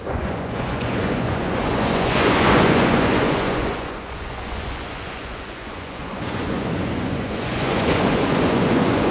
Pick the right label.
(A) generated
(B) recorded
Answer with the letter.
A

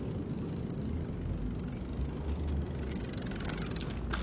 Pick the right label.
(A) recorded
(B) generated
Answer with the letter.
A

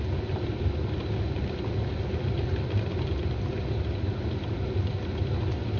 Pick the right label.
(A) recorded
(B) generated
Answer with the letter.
A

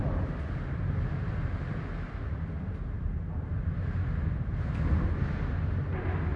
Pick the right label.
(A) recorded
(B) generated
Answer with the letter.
A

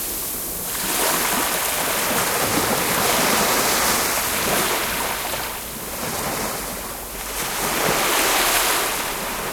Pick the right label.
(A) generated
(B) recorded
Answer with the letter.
B